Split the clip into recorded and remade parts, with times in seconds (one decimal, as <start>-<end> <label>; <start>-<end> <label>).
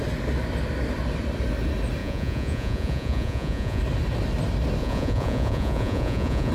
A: 0.0-2.0 recorded; 2.0-3.8 remade; 3.8-4.8 recorded; 4.8-6.5 remade